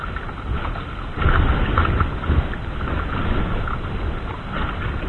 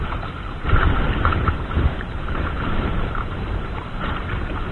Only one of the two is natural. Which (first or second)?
first